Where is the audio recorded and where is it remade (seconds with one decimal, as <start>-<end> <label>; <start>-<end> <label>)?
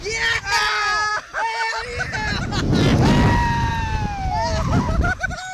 0.0-5.5 recorded